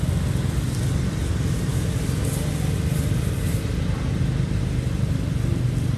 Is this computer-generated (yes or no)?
no